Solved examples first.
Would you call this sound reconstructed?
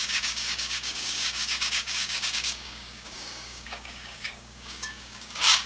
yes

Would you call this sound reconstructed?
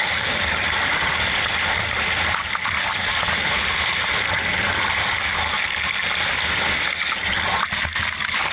no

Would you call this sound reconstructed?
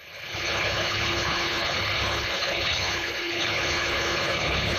yes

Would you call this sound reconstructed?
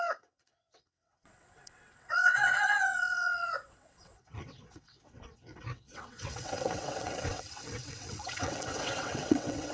yes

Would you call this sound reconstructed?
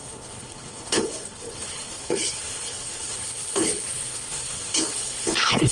yes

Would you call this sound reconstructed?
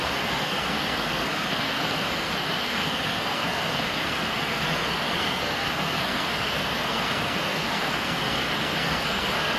yes